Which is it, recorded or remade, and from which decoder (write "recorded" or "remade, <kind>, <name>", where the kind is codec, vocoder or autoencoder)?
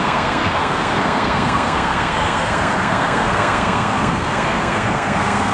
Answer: remade, codec, SNAC